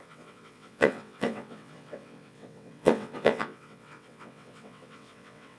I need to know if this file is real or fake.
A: fake